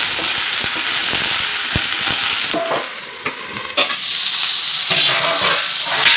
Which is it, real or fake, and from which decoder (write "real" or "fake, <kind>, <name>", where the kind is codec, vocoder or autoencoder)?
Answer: real